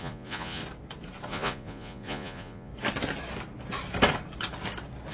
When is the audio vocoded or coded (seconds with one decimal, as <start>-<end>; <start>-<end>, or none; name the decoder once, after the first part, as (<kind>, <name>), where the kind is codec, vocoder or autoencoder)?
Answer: 0.0-0.6 (vocoder, Vocos); 1.3-2.7